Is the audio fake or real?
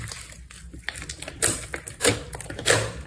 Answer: real